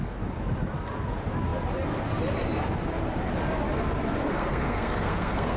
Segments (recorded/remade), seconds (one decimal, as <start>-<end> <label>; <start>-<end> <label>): 0.0-4.2 recorded; 4.2-5.6 remade